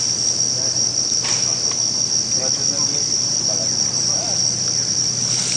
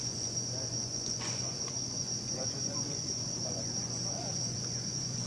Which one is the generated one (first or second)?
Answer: second